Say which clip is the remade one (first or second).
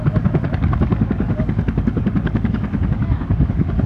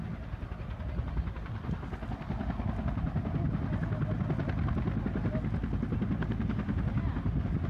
first